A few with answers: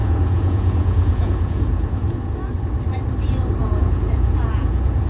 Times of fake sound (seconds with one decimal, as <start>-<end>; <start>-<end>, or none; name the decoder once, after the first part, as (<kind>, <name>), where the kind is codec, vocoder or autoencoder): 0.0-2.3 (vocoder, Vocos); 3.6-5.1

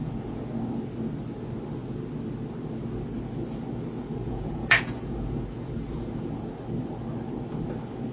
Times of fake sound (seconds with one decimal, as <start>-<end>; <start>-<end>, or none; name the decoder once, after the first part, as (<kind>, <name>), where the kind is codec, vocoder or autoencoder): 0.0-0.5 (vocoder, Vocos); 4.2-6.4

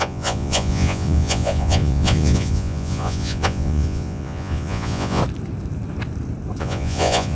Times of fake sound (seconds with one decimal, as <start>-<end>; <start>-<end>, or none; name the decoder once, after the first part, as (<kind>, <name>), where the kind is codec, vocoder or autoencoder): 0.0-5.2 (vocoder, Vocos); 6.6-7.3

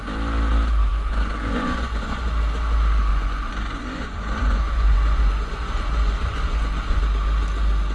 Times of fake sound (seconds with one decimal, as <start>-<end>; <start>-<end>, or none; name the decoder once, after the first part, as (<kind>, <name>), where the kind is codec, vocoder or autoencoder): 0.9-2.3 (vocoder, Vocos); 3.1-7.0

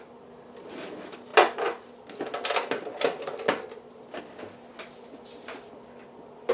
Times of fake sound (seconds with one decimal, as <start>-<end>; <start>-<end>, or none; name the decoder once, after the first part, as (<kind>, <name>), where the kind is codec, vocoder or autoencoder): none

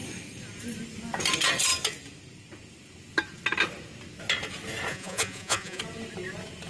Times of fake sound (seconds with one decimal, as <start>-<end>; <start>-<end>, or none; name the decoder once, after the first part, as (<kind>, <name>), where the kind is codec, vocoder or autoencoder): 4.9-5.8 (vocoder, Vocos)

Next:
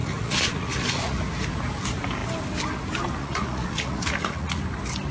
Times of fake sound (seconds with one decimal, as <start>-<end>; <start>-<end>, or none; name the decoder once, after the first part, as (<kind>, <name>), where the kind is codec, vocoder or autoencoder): 0.0-1.2 (vocoder, Vocos); 3.2-4.6

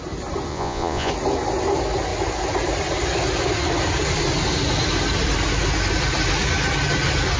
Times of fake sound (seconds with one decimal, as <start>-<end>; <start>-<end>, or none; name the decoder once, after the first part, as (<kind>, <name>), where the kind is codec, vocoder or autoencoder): 0.5-1.1 (vocoder, Vocos)